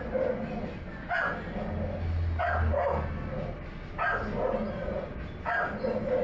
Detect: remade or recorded recorded